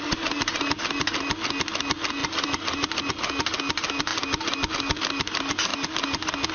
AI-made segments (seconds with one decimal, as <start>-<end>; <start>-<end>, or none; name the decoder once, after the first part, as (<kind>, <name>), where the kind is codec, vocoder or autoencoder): none